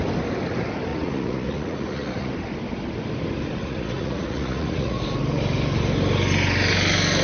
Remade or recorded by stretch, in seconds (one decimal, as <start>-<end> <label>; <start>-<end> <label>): 0.0-0.9 recorded; 0.9-2.3 remade; 2.3-3.6 recorded; 3.6-5.0 remade; 5.0-7.2 recorded